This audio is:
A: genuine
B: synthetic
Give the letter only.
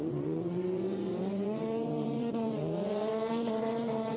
B